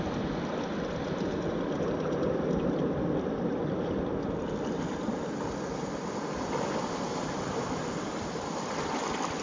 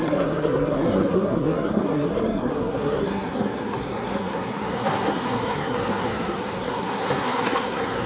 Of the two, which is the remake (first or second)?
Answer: second